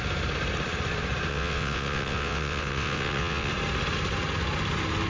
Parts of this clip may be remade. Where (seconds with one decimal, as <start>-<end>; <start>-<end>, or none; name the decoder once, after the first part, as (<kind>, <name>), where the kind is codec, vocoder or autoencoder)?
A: 1.3-3.5 (vocoder, WaveNeXt)